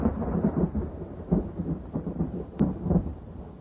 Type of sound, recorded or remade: remade